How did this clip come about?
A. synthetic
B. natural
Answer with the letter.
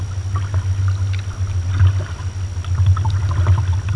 B